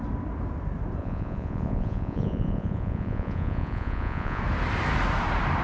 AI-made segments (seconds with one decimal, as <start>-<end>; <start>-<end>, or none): 1.0-4.4